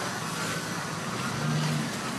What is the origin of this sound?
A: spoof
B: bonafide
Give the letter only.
B